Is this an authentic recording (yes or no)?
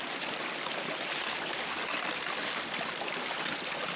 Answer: yes